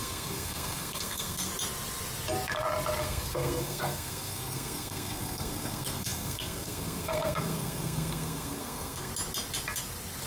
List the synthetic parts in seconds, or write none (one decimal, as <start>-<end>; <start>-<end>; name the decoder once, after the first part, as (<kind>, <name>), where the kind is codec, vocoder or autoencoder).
0.0-1.5 (codec, SNAC); 3.0-9.1